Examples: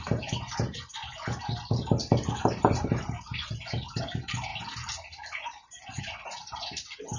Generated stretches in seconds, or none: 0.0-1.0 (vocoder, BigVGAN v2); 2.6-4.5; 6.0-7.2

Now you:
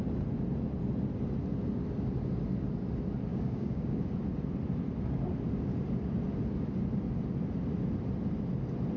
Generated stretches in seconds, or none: 3.3-4.0 (codec, DAC)

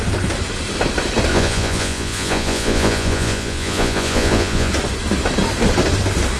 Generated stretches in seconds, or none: 1.3-4.7 (vocoder, Vocos)

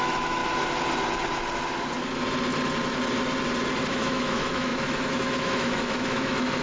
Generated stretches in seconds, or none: 0.0-0.4 (autoencoder, DAC-VAE); 3.9-6.6

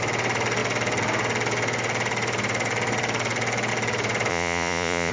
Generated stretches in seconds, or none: 4.3-5.1 (vocoder, Vocos)

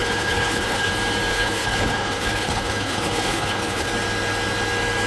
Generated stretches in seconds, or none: 0.0-0.9 (codec, HILCodec); 1.3-3.9